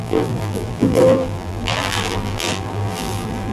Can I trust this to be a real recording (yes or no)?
no